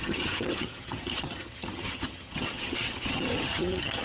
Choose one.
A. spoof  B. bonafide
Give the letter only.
A